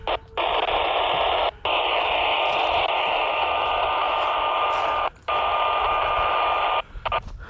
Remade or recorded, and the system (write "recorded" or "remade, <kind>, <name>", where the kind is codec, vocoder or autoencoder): recorded